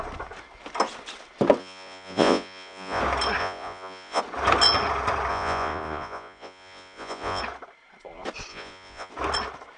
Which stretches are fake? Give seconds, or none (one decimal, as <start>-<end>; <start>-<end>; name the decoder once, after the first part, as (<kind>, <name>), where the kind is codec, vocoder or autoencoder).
1.6-3.0 (vocoder, Vocos); 3.4-4.2; 5.3-7.4; 8.5-9.1